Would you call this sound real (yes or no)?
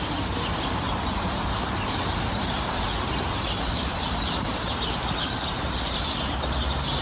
no